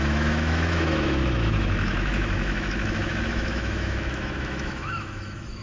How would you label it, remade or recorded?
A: remade